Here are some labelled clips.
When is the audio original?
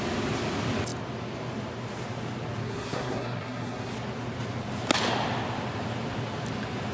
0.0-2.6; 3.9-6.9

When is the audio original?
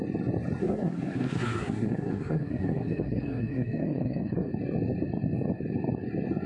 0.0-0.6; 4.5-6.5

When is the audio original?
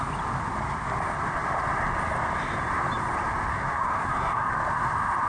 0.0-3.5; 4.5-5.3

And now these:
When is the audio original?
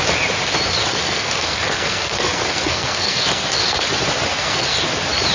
0.0-0.9; 3.9-4.3; 4.8-5.3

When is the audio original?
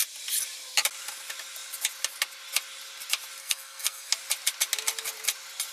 0.0-3.4; 4.1-5.7